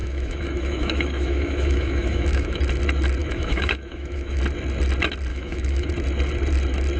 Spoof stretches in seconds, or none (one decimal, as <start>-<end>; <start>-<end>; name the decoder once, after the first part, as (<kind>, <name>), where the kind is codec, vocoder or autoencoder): 0.0-2.6 (autoencoder, DAC-VAE); 3.2-4.4; 5.3-5.9